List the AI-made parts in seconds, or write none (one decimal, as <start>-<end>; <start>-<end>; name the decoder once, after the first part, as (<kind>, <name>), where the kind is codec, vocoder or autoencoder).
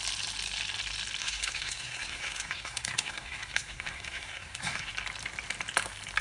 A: 1.2-4.9 (codec, SNAC)